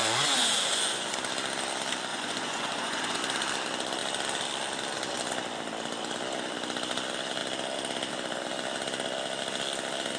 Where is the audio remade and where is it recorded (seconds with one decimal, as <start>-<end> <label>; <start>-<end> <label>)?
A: 0.0-1.1 remade; 1.1-2.1 recorded; 2.1-3.2 remade; 3.2-10.2 recorded